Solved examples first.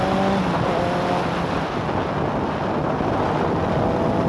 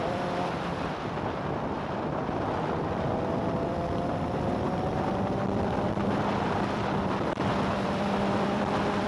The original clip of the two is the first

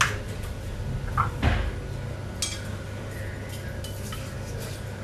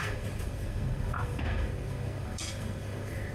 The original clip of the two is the first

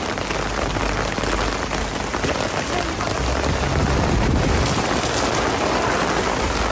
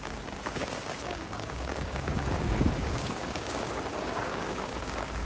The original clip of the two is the first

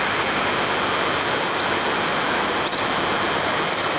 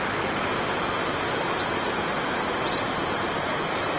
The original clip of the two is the first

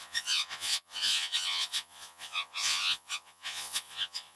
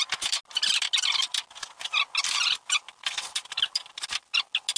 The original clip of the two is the second